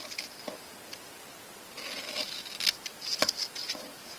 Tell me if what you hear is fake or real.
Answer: real